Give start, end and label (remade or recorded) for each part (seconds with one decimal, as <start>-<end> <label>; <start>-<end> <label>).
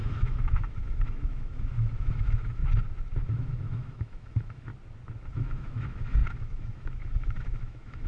0.0-2.6 remade; 2.6-3.2 recorded; 3.2-4.7 remade; 4.7-5.3 recorded; 5.3-8.1 remade